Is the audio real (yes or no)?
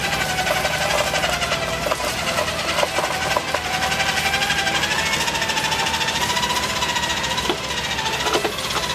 yes